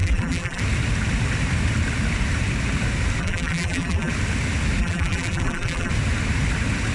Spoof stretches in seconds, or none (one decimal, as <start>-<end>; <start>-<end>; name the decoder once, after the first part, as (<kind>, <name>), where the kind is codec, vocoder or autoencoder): 0.0-0.6 (vocoder, BigVGAN v2); 3.2-4.1; 4.8-5.9